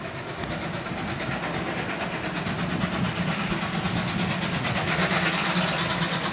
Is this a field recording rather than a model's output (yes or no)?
yes